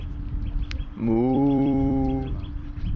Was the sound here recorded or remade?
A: remade